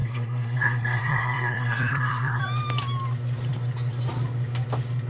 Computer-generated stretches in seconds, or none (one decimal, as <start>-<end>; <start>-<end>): 0.0-2.4